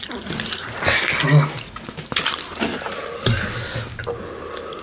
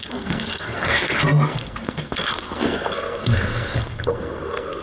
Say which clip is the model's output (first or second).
second